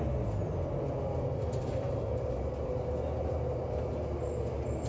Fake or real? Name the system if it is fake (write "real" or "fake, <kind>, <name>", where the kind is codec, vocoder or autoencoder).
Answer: real